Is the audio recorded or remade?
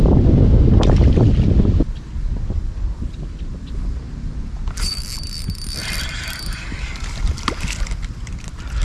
recorded